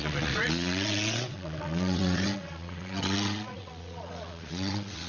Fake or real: fake